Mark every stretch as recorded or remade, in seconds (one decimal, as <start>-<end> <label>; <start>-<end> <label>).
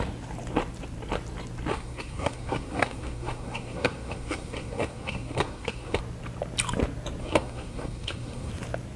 0.0-1.7 recorded; 1.7-6.0 remade; 6.0-7.2 recorded; 7.2-8.5 remade; 8.5-9.0 recorded